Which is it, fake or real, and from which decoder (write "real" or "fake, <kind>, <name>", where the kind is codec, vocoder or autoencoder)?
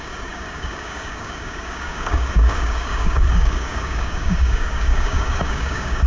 fake, codec, DAC